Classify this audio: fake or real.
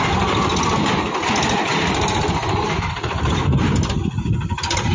real